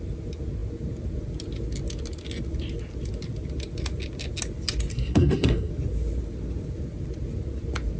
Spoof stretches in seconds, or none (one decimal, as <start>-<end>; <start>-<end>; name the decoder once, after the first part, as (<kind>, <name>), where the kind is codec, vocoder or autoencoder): 4.9-5.7 (codec, SNAC)